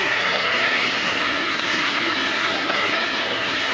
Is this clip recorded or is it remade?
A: remade